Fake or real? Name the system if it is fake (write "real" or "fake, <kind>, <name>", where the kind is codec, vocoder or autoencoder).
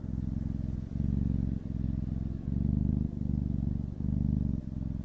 real